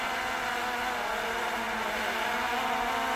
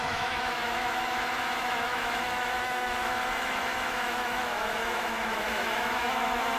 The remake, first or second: second